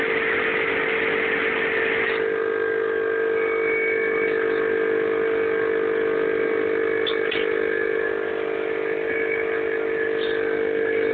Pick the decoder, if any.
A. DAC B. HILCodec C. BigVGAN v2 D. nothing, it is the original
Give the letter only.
D